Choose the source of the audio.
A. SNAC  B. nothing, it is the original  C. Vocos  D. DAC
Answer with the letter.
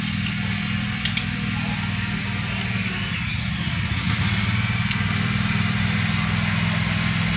B